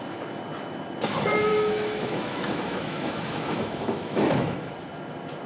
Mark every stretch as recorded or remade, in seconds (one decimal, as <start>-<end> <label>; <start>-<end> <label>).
0.0-1.5 recorded; 1.5-4.7 remade; 4.7-5.5 recorded